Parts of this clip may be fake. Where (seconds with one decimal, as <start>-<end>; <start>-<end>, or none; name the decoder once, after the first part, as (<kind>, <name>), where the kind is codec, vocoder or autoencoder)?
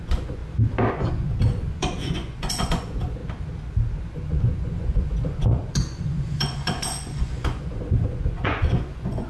0.0-0.4 (vocoder, Vocos); 0.9-3.2; 4.0-9.3